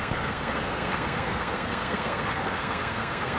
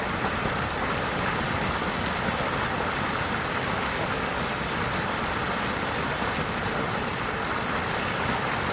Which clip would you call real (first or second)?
second